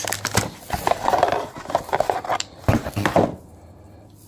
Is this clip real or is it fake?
real